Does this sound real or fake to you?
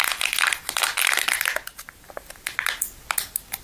real